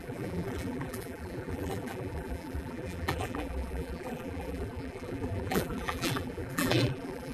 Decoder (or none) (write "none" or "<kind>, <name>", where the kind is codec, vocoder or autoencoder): vocoder, BigVGAN v2